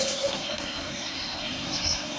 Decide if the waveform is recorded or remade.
remade